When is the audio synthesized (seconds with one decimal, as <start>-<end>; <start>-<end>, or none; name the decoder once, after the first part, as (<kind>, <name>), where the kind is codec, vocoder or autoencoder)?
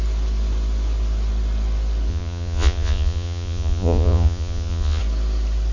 2.1-5.0 (vocoder, Vocos)